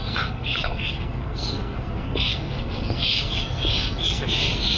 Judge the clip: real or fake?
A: fake